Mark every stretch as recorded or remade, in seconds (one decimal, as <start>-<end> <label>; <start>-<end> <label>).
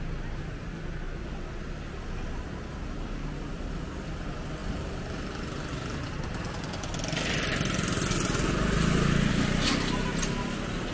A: 0.0-10.9 recorded